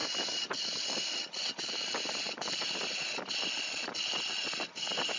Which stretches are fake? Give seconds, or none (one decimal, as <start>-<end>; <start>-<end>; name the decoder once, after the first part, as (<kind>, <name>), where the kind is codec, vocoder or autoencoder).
none